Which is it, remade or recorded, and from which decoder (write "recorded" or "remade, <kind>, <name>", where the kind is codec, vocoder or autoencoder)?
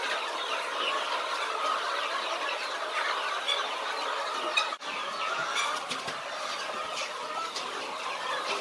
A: recorded